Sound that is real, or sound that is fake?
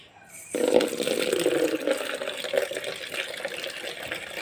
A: real